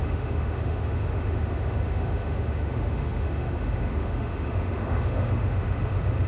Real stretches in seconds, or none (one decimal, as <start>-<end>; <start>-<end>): none